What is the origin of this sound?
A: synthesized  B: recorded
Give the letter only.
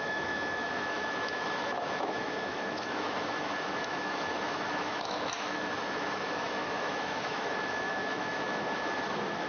A